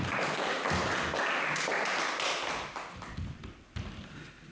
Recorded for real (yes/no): yes